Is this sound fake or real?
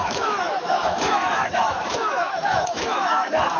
fake